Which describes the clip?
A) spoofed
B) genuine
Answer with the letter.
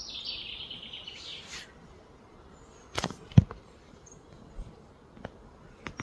B